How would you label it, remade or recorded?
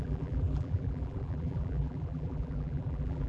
remade